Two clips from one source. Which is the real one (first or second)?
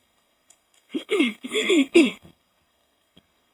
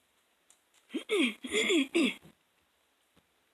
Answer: second